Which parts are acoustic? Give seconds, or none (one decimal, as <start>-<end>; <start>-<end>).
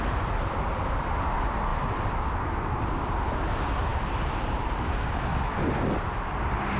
0.0-6.8